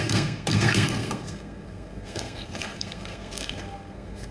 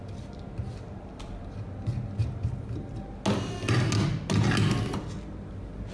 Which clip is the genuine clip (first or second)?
second